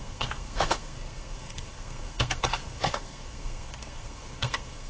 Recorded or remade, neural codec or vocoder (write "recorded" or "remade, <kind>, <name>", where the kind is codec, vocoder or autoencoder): remade, codec, SNAC